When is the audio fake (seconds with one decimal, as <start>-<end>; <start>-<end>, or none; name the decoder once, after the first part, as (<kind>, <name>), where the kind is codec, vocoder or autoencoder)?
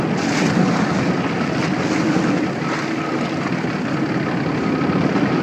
none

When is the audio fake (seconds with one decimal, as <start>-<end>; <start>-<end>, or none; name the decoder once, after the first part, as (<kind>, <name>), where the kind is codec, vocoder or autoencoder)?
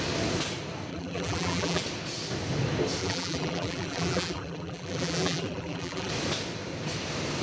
0.9-1.8 (vocoder, BigVGAN v2); 3.0-6.1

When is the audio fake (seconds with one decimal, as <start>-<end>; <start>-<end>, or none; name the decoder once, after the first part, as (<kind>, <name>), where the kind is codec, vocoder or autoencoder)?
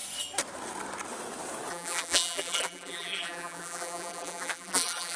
1.7-5.2 (vocoder, BigVGAN v2)